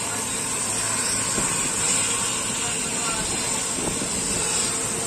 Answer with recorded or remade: recorded